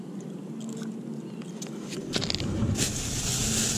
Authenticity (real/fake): real